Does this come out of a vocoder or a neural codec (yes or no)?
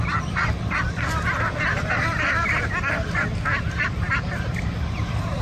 yes